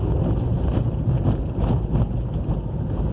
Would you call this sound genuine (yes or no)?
yes